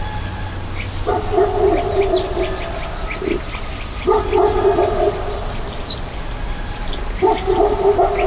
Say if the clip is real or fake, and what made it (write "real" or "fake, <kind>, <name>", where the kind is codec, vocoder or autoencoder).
real